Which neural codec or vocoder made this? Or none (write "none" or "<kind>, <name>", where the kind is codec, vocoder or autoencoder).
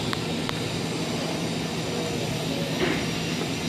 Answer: none